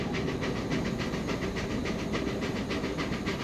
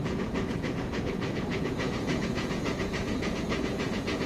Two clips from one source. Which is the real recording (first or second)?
first